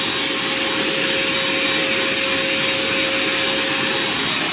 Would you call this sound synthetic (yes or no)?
no